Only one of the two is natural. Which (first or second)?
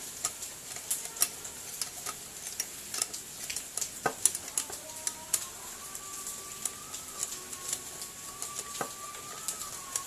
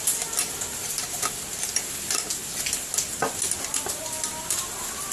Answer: first